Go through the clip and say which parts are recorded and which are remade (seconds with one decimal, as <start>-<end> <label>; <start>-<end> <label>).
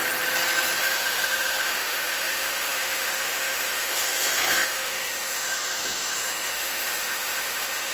0.0-0.8 recorded; 0.8-7.9 remade